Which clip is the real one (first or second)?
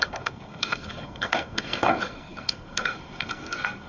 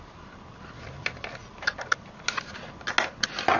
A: second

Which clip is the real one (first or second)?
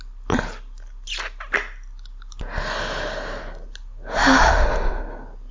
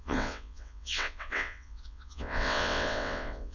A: first